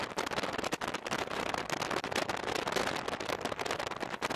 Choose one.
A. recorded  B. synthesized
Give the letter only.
A